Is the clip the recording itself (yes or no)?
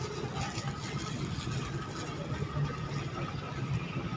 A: yes